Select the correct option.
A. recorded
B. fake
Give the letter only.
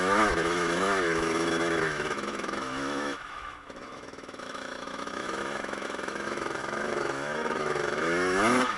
B